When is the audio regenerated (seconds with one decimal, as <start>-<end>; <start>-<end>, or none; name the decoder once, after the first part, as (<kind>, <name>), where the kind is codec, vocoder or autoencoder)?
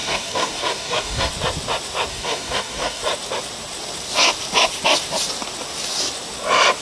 0.0-1.3 (codec, DAC); 2.1-3.0